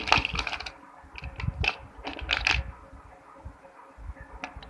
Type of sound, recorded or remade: recorded